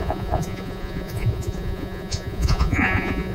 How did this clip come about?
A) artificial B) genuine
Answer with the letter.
A